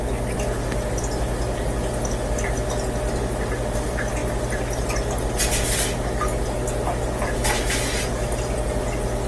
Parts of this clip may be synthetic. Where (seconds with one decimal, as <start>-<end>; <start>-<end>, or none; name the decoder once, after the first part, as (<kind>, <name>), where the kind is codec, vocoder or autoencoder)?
none